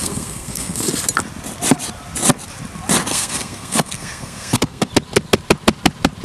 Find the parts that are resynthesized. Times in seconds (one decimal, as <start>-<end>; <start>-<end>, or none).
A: 0.0-0.9; 3.1-4.9